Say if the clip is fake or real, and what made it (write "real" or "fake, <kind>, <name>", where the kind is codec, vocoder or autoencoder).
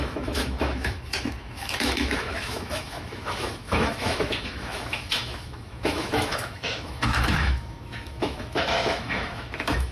fake, autoencoder, DAC-VAE